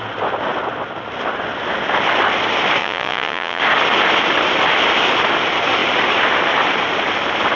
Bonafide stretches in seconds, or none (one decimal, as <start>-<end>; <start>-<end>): 0.0-2.8; 3.6-7.6